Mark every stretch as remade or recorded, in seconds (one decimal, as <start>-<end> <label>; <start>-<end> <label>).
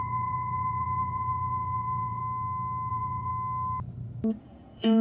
0.0-2.2 remade; 2.2-2.9 recorded; 2.9-3.3 remade; 3.3-4.4 recorded; 4.4-5.0 remade